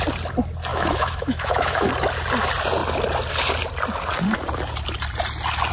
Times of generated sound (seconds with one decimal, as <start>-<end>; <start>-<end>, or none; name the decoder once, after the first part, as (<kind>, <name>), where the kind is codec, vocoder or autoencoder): 0.7-1.9 (autoencoder, DAC-VAE)